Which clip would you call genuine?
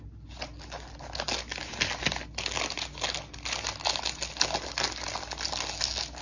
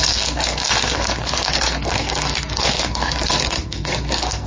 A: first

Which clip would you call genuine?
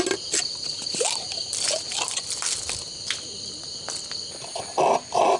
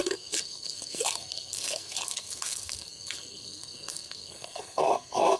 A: first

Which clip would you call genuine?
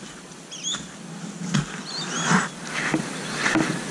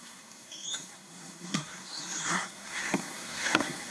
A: first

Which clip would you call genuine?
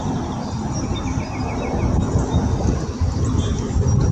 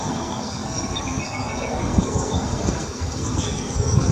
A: first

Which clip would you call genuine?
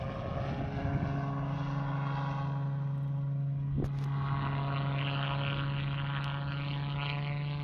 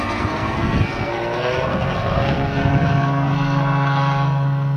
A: first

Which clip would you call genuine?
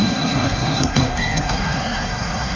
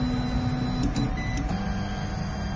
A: second